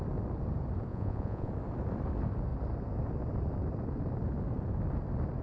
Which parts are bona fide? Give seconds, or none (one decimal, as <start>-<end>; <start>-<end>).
0.0-0.9; 1.5-5.4